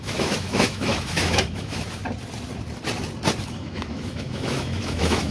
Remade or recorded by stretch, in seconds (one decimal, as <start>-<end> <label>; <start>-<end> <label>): 0.0-2.0 remade; 2.0-3.4 recorded; 3.4-5.3 remade